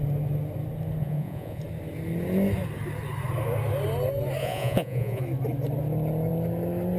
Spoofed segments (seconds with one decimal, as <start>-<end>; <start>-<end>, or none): 1.0-1.6; 4.4-5.2